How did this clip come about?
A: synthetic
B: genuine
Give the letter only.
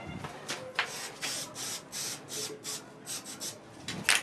B